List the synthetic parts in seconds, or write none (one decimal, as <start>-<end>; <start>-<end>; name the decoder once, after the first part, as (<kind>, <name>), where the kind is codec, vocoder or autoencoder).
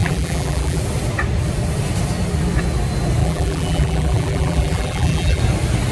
0.0-0.8 (vocoder, BigVGAN v2); 3.2-5.4